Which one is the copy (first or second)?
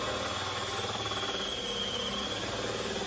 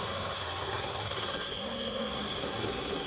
second